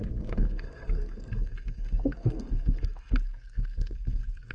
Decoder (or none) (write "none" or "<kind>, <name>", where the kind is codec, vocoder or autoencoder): codec, SNAC